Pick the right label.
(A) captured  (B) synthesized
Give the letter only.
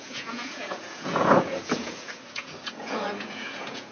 B